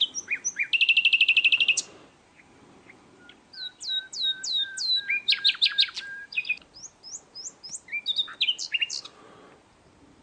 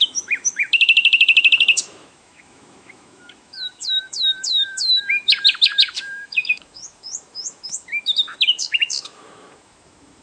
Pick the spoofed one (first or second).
second